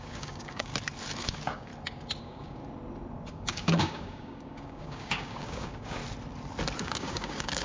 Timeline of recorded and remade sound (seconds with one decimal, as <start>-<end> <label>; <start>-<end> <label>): 0.0-0.7 remade; 0.7-1.2 recorded; 1.2-1.7 remade; 1.7-2.2 recorded; 2.2-2.6 remade; 2.6-3.3 recorded; 3.3-6.0 remade; 6.0-6.8 recorded; 6.8-7.6 remade